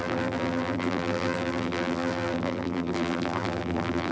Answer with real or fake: fake